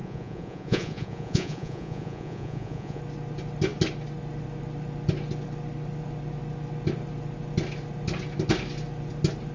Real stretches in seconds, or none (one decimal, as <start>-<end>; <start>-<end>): 3.0-9.5